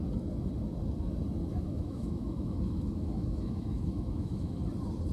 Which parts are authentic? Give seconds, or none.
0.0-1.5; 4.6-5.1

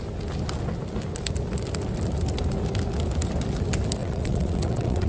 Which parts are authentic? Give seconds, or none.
0.0-4.0

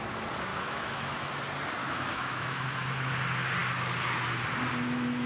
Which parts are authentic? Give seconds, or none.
0.0-0.5; 1.3-1.8; 3.1-5.3